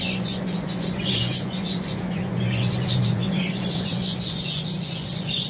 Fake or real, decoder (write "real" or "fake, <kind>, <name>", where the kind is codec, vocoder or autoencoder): fake, vocoder, Vocos